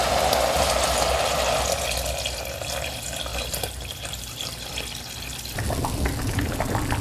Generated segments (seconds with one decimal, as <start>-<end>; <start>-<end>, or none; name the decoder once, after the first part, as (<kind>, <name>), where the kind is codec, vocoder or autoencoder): 3.3-4.7 (vocoder, BigVGAN v2)